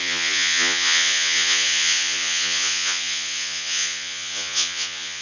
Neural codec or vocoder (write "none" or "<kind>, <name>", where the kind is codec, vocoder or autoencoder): vocoder, Vocos